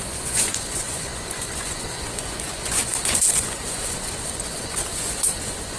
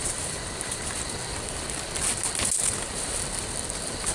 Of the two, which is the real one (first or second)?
second